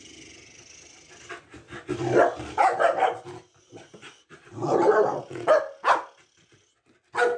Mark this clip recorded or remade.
recorded